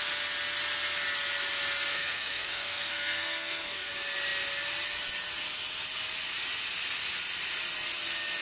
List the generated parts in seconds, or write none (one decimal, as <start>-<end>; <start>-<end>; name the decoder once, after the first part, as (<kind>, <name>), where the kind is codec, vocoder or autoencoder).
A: 1.9-3.9 (codec, SNAC)